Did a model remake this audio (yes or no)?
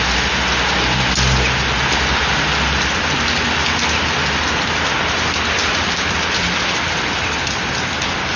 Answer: no